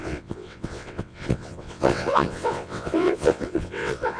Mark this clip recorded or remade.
remade